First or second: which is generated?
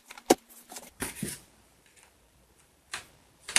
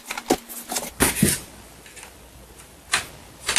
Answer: first